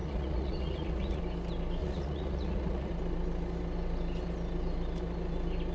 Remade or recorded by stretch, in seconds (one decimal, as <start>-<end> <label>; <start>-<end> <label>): 0.0-1.2 remade; 1.2-1.8 recorded; 1.8-2.9 remade; 2.9-5.7 recorded